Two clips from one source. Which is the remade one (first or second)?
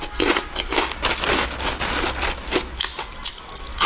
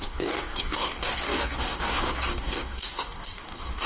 second